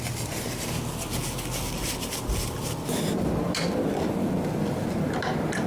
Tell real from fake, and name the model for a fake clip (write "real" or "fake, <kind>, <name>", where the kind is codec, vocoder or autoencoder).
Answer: real